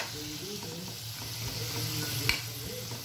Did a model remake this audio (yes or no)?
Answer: no